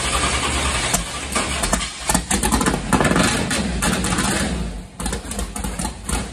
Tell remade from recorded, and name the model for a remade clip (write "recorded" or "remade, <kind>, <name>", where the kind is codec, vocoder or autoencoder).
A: recorded